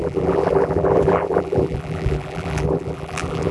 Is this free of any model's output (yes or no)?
no